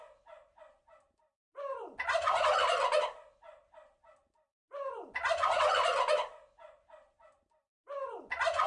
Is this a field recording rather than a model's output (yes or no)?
yes